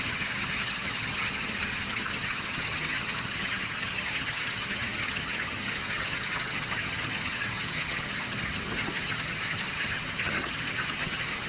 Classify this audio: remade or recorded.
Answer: remade